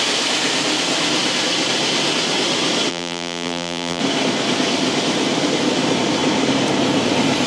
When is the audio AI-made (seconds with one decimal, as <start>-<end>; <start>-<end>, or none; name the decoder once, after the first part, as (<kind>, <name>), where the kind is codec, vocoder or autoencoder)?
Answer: 2.9-4.0 (vocoder, BigVGAN v2)